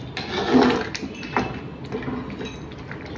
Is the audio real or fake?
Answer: real